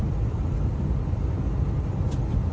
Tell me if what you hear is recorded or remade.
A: recorded